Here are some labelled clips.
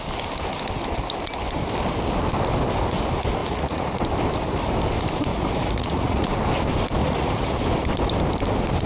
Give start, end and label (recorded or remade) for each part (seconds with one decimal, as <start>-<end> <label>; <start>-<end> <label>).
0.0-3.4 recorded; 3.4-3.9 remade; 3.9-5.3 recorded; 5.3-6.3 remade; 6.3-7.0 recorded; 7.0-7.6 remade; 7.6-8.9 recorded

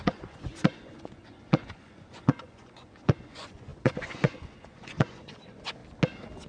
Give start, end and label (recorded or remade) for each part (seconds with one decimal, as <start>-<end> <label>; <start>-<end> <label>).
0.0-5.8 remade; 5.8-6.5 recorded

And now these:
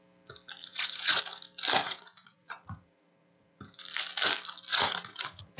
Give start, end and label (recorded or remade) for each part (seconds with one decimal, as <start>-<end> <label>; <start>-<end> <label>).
0.0-0.6 recorded; 0.6-1.2 remade; 1.2-1.8 recorded; 1.8-3.8 remade; 3.8-4.7 recorded; 4.7-5.6 remade

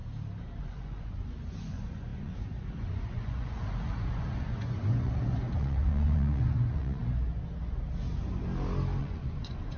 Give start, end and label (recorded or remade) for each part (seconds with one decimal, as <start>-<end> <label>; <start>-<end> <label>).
0.0-0.6 recorded; 0.6-7.0 remade; 7.0-9.0 recorded; 9.0-9.8 remade

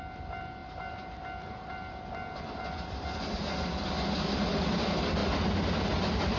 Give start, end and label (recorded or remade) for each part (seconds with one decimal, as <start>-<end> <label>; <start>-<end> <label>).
0.0-6.4 recorded

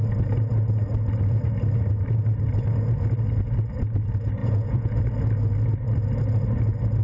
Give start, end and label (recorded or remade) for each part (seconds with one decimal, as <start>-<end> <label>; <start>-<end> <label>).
0.0-4.4 recorded; 4.4-5.0 remade; 5.0-7.0 recorded

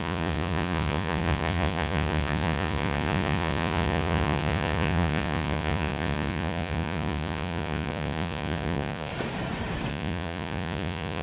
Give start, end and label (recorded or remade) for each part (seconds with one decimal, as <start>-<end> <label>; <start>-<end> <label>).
0.0-9.1 remade; 9.1-9.9 recorded; 9.9-11.2 remade